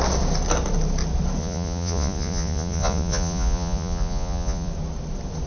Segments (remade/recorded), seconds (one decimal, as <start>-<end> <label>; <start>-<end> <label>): 0.0-1.4 recorded; 1.4-4.7 remade; 4.7-5.5 recorded